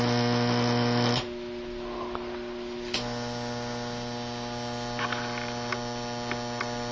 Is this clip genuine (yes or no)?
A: yes